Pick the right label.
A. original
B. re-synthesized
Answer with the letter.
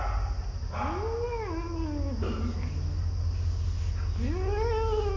A